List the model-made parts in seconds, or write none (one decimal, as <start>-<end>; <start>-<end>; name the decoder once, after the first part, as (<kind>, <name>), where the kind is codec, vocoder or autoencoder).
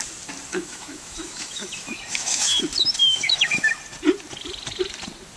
0.5-2.6 (autoencoder, DAC-VAE); 3.0-3.8